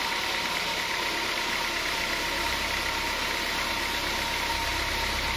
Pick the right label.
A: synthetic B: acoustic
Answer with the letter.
A